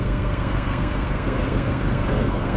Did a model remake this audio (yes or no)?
yes